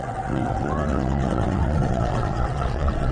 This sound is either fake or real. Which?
fake